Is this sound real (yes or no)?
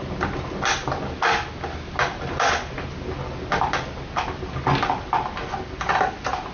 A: yes